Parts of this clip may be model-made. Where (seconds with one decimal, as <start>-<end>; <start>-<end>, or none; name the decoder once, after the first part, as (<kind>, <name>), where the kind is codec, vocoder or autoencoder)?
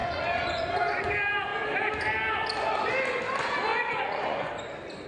0.0-1.1 (vocoder, Vocos); 3.7-4.5